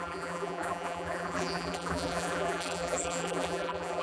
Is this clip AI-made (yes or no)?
yes